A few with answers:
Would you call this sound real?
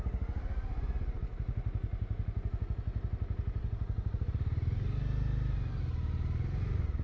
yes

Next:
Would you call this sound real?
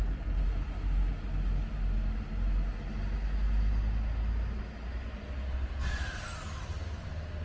yes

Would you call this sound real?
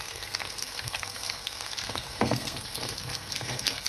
no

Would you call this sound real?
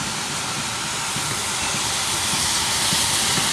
yes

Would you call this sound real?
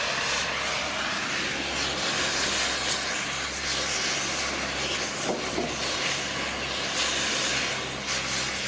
yes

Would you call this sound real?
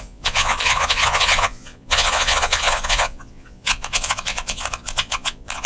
no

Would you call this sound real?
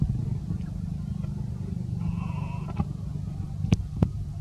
yes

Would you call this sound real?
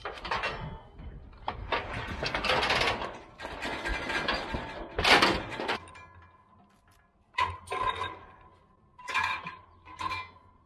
yes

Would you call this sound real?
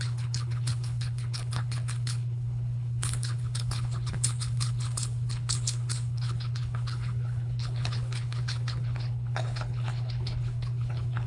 no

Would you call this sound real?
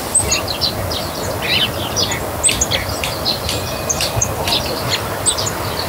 yes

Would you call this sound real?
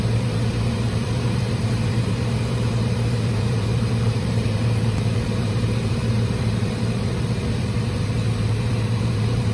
no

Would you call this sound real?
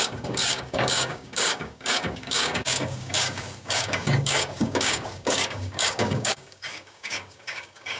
no